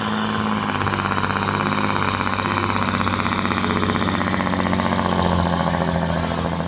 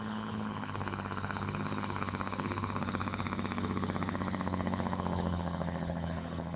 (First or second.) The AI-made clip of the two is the second